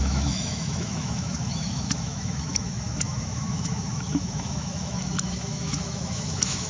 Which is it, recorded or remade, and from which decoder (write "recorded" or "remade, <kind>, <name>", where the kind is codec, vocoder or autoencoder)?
remade, autoencoder, DAC-VAE